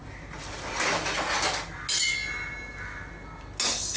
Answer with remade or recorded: recorded